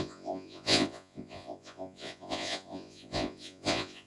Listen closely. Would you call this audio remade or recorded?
remade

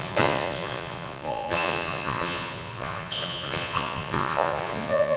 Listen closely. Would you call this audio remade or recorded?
remade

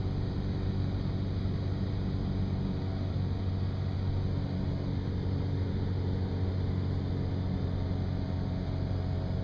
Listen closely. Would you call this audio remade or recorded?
recorded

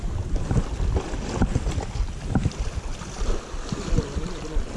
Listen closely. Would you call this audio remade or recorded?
recorded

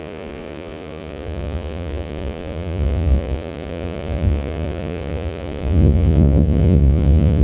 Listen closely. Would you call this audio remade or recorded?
remade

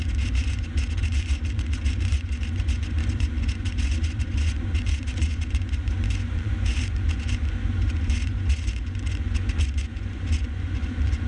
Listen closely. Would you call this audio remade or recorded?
remade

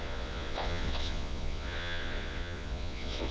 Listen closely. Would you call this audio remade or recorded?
remade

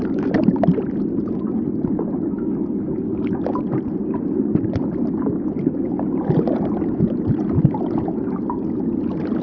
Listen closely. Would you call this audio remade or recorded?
recorded